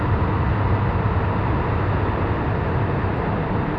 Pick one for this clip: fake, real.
real